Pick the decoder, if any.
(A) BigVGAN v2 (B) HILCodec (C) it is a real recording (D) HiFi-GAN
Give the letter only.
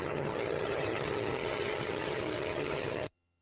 D